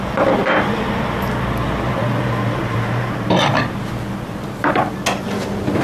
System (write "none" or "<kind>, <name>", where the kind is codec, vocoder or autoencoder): none